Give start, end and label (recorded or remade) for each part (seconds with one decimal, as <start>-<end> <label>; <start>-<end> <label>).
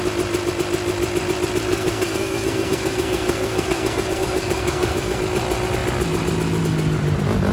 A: 0.0-1.7 recorded; 1.7-5.2 remade; 5.2-7.5 recorded